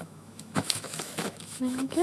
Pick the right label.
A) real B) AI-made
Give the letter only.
B